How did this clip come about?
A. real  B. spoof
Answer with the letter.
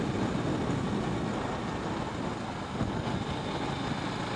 A